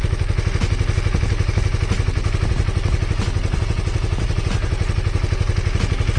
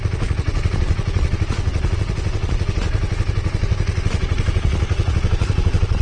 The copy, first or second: second